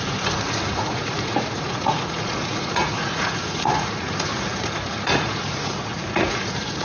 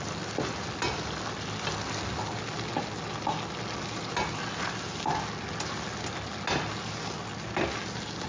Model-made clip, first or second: first